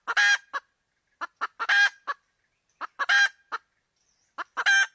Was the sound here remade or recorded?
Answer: recorded